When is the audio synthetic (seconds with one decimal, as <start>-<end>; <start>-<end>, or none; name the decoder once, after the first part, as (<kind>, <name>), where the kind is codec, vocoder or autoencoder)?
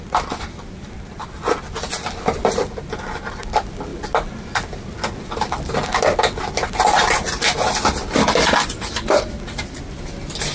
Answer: none